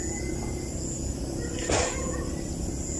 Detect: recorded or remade recorded